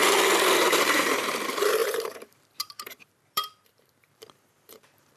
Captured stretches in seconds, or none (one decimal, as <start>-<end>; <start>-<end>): 0.0-0.7